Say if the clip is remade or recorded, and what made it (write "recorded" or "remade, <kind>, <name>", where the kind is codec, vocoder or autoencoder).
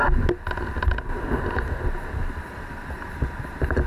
recorded